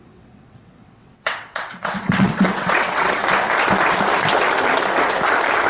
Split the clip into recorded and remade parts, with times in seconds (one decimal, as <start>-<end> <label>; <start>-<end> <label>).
0.0-3.2 remade; 3.2-5.7 recorded